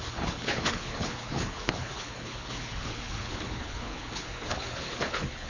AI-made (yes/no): yes